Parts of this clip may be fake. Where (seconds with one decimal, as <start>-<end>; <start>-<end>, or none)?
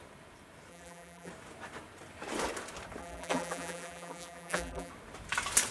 0.7-1.3; 3.0-4.9